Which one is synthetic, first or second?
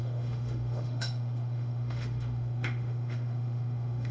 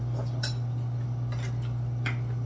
first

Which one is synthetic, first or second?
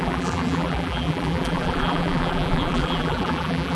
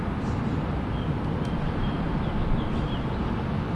first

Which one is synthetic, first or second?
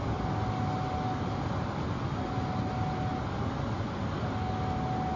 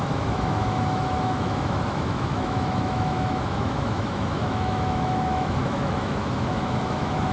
second